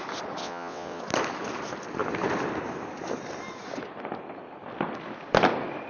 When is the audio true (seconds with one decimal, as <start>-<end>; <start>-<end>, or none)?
0.0-0.4; 1.0-5.9